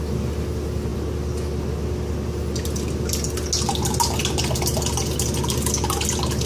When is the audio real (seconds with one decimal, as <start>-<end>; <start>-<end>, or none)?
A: 0.0-6.5